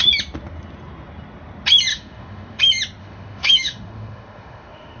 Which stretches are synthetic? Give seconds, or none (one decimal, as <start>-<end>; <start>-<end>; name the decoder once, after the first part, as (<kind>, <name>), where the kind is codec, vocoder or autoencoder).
1.9-2.6 (autoencoder, DAC-VAE); 3.0-5.0